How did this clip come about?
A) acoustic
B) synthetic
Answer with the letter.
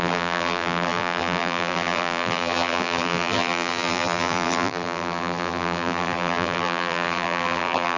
B